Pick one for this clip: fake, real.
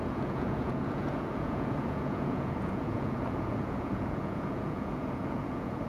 fake